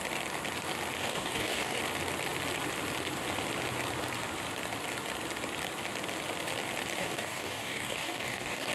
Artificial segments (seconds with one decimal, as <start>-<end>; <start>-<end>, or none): 1.0-1.8; 7.0-8.7